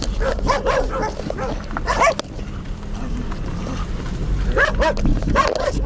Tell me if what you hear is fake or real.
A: real